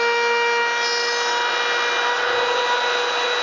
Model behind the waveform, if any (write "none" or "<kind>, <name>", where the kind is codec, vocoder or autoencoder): none